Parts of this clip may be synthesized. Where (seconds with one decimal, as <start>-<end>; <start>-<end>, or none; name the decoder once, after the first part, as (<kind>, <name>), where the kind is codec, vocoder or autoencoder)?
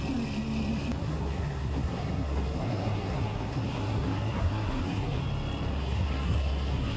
1.0-5.2 (codec, SNAC); 5.7-7.0